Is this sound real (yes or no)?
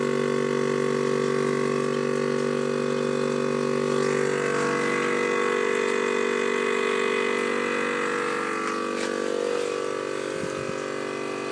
yes